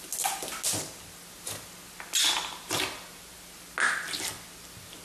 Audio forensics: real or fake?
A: real